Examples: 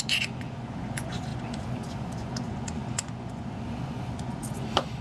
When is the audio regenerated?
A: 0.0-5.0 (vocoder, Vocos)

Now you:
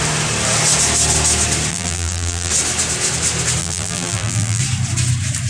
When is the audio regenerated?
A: 1.7-2.5 (vocoder, BigVGAN v2); 3.6-4.6

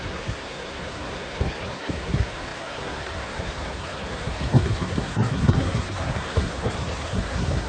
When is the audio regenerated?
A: 0.0-7.7 (codec, SNAC)